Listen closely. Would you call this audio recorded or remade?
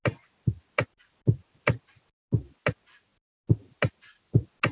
recorded